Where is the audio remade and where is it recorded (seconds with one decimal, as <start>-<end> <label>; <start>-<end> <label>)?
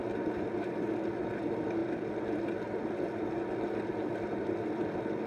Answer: 0.0-5.3 recorded